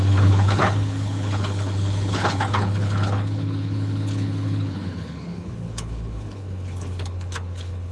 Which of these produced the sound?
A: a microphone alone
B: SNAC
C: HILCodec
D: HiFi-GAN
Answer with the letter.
C